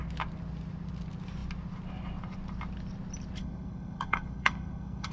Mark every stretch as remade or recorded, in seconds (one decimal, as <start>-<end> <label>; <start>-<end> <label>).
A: 0.0-3.4 recorded; 3.4-5.1 remade